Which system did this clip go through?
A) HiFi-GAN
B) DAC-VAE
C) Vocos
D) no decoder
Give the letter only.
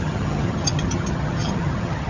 A